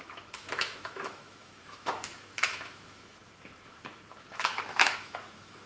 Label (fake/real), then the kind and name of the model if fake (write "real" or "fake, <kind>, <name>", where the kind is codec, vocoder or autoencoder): fake, autoencoder, DAC-VAE